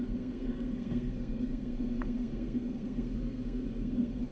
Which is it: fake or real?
fake